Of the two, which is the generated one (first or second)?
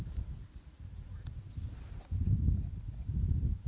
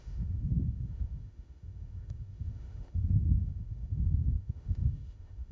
second